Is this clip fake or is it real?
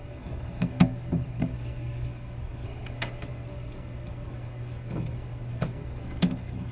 fake